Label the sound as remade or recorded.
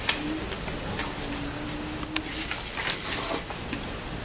recorded